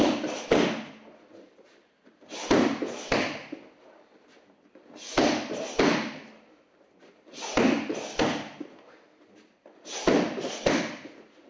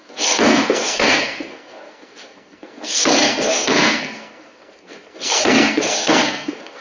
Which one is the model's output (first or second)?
second